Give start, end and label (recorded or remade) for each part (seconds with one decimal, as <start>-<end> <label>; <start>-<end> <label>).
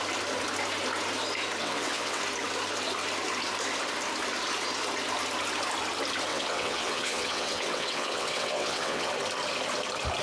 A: 0.0-1.6 recorded; 1.6-2.2 remade; 2.2-6.3 recorded; 6.3-9.1 remade; 9.1-10.2 recorded